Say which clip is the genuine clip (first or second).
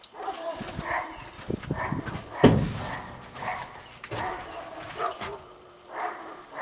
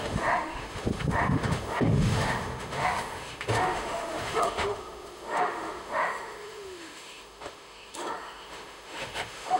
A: first